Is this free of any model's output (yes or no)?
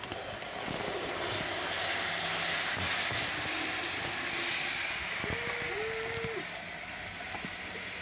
yes